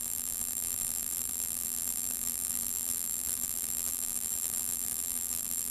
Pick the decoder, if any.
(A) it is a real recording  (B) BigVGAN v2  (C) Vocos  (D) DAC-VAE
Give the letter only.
B